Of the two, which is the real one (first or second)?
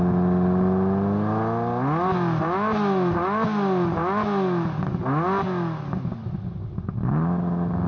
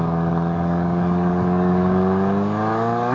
first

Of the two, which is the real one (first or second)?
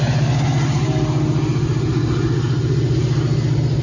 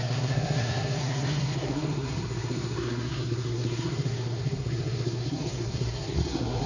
first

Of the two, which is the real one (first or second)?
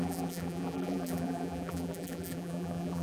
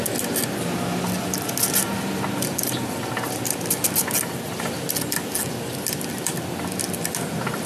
second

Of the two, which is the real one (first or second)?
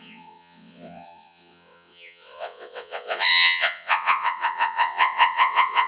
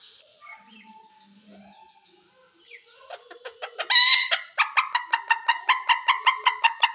second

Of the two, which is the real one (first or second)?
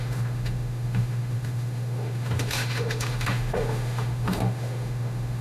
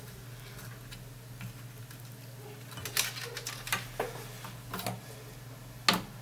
second